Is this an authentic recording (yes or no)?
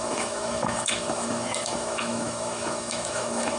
no